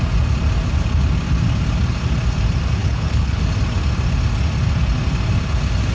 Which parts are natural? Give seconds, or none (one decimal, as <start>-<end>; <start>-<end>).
0.0-2.8; 3.4-5.9